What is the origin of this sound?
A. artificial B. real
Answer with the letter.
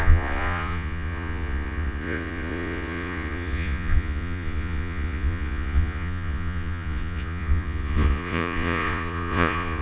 A